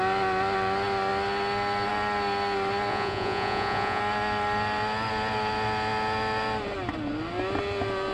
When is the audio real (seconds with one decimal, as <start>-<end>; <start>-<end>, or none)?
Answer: 0.0-2.9; 4.0-8.1